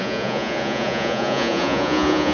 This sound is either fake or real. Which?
fake